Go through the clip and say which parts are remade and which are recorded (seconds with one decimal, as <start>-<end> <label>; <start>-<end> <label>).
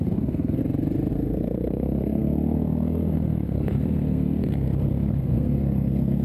0.0-0.6 remade; 0.6-1.1 recorded; 1.1-6.2 remade